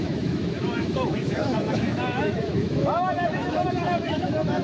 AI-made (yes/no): yes